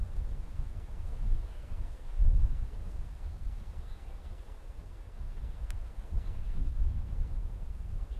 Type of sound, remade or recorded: remade